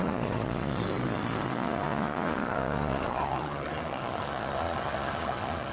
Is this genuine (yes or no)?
no